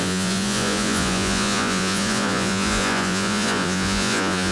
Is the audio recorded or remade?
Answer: remade